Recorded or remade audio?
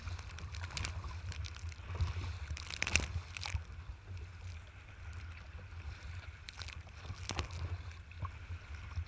recorded